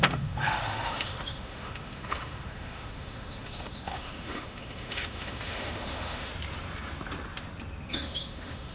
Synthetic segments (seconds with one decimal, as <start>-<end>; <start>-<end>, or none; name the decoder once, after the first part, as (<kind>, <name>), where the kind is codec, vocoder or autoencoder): 0.0-6.3 (autoencoder, DAC-VAE); 7.9-8.7